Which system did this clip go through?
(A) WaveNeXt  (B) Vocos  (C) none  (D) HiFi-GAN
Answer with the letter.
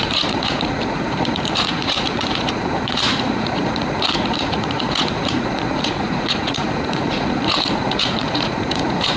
B